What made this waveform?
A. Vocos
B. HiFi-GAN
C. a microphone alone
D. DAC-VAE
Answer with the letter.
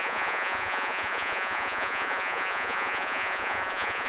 A